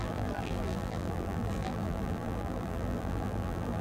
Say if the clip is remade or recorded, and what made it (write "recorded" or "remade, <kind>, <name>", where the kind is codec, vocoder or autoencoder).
remade, vocoder, BigVGAN v2